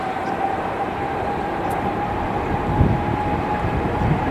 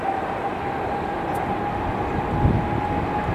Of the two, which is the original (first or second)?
second